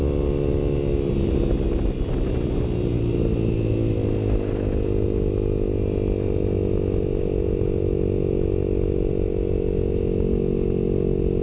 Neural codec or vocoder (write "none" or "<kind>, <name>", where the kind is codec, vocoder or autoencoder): none